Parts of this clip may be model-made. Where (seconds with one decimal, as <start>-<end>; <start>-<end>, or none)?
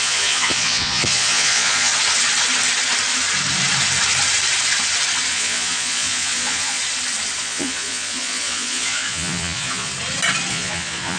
0.0-1.9; 5.3-6.8; 7.4-9.9; 10.5-11.2